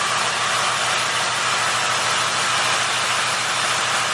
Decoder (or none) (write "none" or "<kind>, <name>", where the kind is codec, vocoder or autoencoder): none